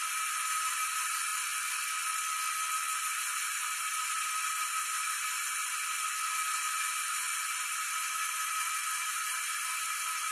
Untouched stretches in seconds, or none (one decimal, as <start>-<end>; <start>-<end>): 1.3-3.0